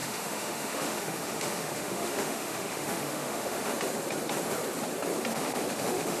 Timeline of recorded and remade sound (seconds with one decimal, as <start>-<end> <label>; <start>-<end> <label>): 0.0-3.7 remade; 3.7-5.3 recorded; 5.3-6.2 remade